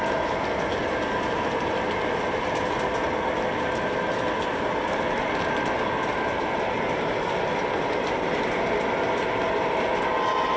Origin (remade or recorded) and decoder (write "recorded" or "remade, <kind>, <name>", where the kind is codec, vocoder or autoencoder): recorded